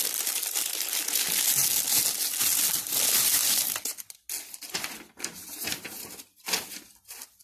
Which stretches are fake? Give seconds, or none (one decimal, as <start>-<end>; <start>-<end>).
none